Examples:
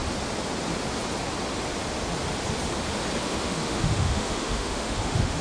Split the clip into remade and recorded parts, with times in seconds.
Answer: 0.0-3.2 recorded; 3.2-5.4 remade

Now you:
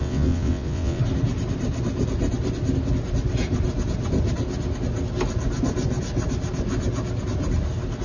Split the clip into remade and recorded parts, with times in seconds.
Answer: 0.0-1.0 remade; 1.0-8.0 recorded

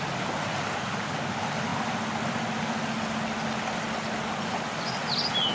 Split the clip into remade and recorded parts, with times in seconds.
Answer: 0.0-5.5 recorded

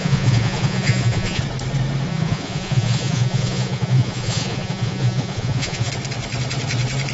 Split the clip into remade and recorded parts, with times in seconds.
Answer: 0.0-1.4 remade; 1.4-2.1 recorded; 2.1-5.9 remade; 5.9-7.1 recorded

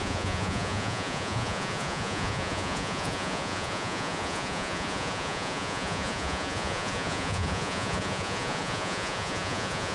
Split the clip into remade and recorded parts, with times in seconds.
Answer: 0.0-9.9 remade

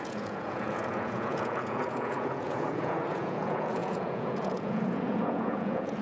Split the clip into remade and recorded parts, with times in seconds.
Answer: 0.0-6.0 remade

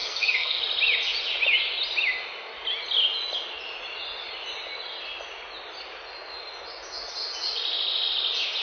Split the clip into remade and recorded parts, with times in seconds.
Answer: 0.0-0.6 remade; 0.6-8.6 recorded

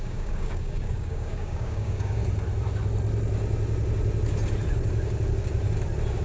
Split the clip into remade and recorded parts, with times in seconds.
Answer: 0.0-2.2 remade; 2.2-6.2 recorded